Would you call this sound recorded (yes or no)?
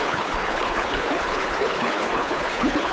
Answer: no